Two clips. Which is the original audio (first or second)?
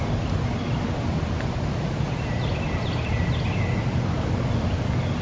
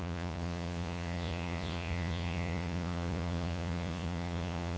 first